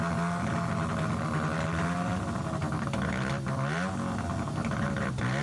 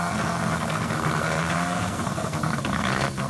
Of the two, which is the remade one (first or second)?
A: second